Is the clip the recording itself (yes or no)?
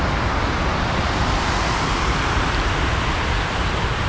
yes